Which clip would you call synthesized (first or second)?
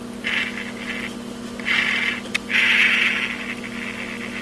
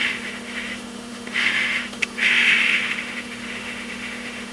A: second